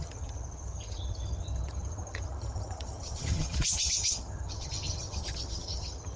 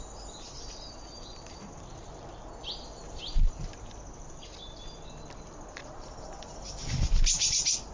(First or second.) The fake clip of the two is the first